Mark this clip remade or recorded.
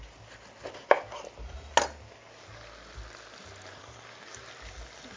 recorded